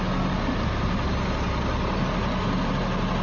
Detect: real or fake real